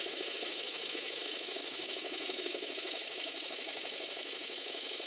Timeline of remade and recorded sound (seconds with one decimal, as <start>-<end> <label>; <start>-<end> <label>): 0.0-5.1 remade